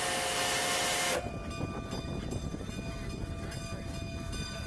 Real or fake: real